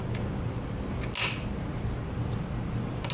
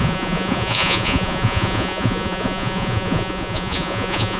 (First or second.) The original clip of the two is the first